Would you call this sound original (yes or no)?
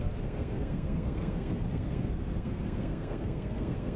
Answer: no